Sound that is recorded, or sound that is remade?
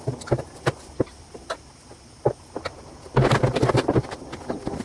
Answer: recorded